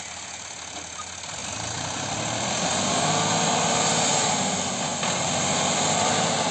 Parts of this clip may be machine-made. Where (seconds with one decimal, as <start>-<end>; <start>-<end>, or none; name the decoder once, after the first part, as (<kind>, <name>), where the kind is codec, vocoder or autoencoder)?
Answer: none